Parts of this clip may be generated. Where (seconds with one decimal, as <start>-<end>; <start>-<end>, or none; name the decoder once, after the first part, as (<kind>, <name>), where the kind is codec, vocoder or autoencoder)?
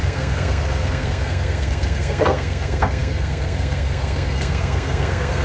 0.0-5.4 (codec, SNAC)